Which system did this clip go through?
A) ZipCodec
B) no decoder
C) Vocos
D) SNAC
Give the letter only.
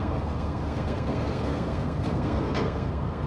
D